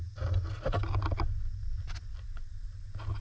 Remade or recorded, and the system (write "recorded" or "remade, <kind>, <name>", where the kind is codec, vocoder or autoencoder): recorded